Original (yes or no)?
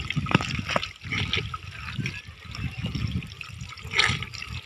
yes